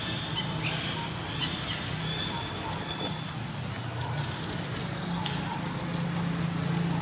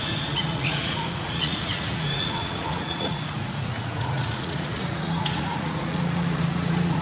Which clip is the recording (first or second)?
first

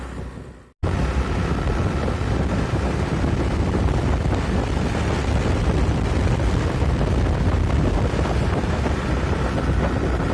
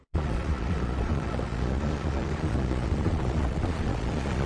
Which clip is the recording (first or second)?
first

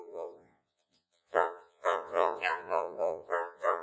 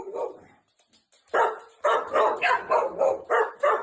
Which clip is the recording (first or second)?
second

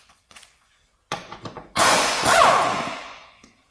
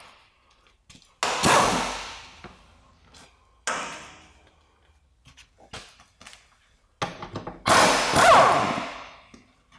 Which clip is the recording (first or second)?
second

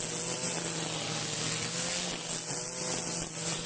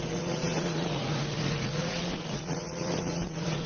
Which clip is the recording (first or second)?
first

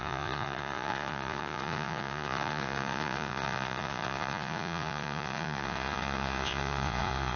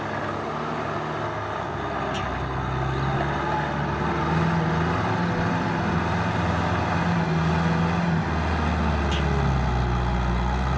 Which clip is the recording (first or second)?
second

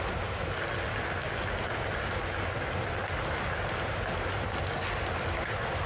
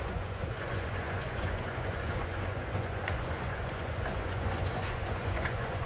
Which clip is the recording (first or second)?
first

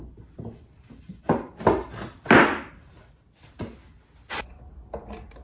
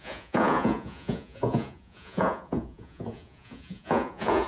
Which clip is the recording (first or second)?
first